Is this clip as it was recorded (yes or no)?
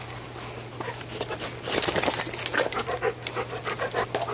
no